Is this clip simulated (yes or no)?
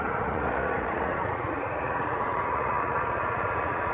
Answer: yes